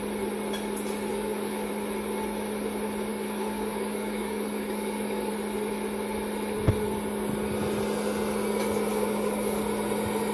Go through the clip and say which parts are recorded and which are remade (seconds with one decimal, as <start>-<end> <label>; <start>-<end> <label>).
0.0-1.1 recorded; 1.1-1.7 remade; 1.7-3.1 recorded; 3.1-5.3 remade; 5.3-8.9 recorded; 8.9-9.6 remade; 9.6-10.3 recorded